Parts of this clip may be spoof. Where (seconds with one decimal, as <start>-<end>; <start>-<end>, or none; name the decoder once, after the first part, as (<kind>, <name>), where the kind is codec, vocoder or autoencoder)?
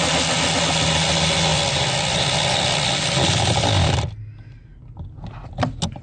none